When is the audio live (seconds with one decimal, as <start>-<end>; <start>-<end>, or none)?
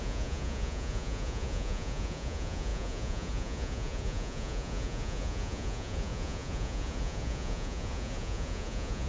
none